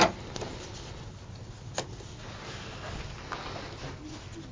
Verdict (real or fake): real